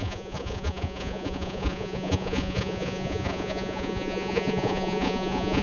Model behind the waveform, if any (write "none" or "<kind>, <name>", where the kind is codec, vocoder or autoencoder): vocoder, Vocos